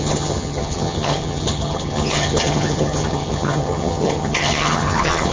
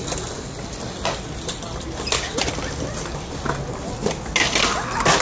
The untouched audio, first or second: second